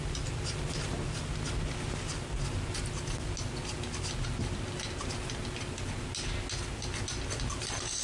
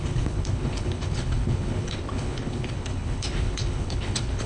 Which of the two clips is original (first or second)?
first